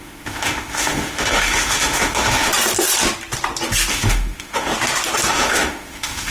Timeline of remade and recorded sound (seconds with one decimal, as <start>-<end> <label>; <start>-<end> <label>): 0.0-2.5 remade; 2.5-3.9 recorded; 3.9-4.7 remade; 4.7-5.3 recorded; 5.3-6.3 remade